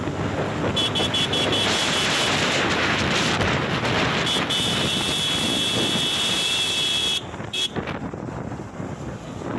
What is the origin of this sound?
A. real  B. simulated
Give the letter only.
A